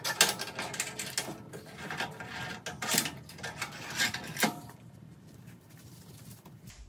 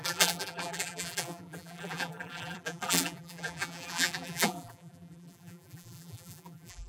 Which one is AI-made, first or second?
second